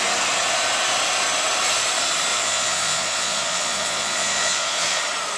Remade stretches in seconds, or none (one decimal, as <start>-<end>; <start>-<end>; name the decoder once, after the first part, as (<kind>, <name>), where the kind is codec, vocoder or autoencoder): 2.3-5.0 (vocoder, Vocos)